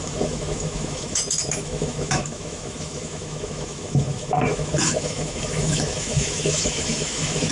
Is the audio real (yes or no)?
no